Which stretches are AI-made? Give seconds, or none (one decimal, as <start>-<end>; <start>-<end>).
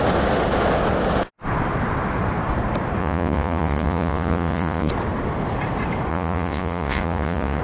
3.0-4.9; 6.1-7.6